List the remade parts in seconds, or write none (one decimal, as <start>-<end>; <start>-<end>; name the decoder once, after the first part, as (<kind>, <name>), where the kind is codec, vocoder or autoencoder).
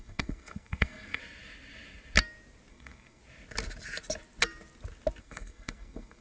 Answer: 0.0-1.2 (codec, SNAC); 2.7-3.2; 5.2-6.2